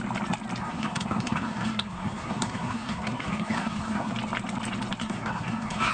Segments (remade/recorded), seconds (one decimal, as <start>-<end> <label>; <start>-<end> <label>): 0.0-0.6 recorded; 0.6-4.1 remade; 4.1-5.0 recorded; 5.0-5.9 remade